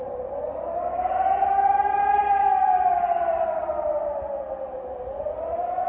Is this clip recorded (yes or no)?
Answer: yes